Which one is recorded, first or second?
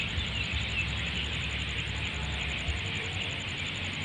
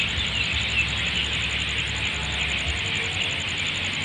second